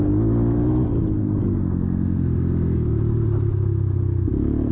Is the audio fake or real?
real